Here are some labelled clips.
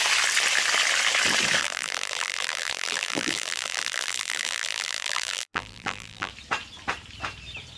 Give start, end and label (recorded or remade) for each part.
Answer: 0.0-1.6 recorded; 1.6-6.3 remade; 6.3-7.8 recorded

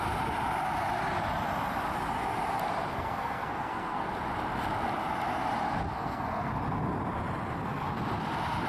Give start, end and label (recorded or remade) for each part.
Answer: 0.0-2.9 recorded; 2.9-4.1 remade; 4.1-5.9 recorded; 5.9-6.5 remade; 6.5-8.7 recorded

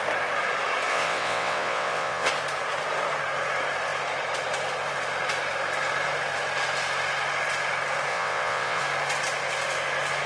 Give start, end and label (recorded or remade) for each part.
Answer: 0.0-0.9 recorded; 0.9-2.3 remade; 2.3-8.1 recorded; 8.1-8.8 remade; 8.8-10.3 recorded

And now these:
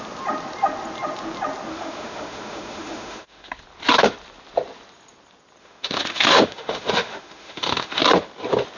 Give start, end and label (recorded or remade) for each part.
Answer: 0.0-1.7 recorded; 1.7-3.5 remade; 3.5-5.6 recorded; 5.6-8.0 remade; 8.0-8.8 recorded